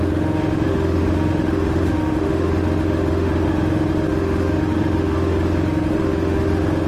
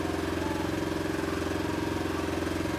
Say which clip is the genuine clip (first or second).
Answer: second